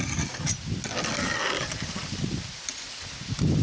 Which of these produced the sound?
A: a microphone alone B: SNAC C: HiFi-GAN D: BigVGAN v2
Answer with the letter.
A